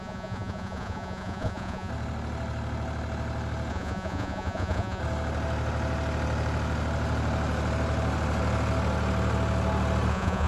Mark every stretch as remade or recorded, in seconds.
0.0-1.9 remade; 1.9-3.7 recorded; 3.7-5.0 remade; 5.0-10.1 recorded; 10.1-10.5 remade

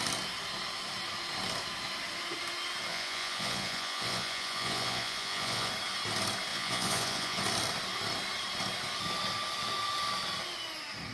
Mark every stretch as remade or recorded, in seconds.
0.0-2.9 recorded; 2.9-5.7 remade; 5.7-6.5 recorded; 6.5-7.4 remade; 7.4-11.1 recorded

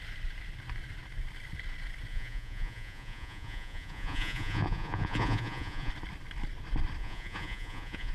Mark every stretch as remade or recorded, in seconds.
0.0-2.1 recorded; 2.1-5.9 remade; 5.9-7.0 recorded; 7.0-8.1 remade

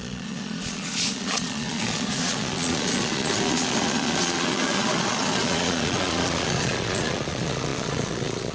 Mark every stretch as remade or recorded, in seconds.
0.0-8.5 remade

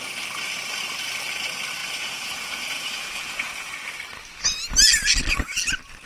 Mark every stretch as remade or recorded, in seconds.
0.0-1.8 recorded; 1.8-3.7 remade; 3.7-6.1 recorded

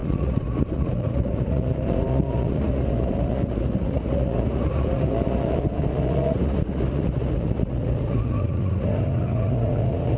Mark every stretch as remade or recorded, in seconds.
0.0-10.2 remade

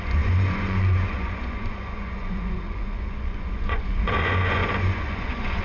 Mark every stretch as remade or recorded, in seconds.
0.0-5.6 remade